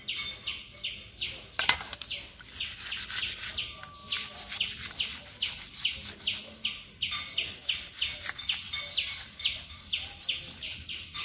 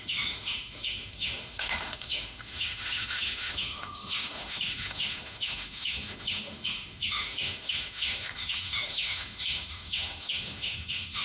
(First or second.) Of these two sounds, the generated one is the second